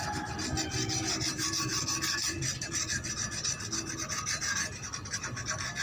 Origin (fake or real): real